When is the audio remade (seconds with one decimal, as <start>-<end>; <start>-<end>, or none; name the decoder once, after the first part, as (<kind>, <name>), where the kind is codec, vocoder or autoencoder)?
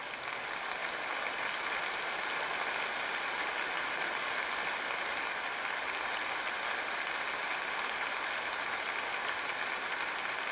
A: none